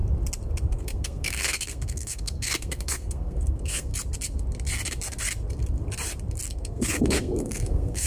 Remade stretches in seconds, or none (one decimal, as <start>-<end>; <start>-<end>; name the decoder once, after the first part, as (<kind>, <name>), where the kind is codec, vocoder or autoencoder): 0.6-3.9 (codec, SNAC); 6.5-8.1